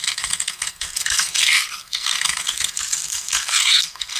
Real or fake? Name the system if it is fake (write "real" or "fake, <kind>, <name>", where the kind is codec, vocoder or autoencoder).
fake, codec, SNAC